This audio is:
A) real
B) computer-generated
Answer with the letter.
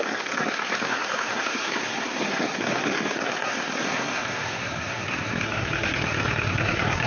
B